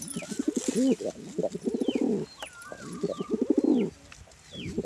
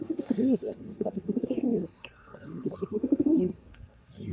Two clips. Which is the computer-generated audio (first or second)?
second